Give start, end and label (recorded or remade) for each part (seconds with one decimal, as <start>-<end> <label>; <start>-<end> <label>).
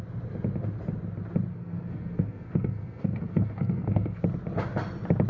0.0-1.5 recorded; 1.5-4.2 remade; 4.2-5.3 recorded